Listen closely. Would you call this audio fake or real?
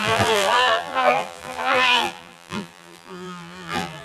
fake